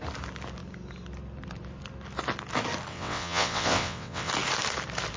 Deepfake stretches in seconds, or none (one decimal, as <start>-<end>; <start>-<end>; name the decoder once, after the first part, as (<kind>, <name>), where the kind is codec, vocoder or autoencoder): 2.9-4.3 (vocoder, WaveNeXt)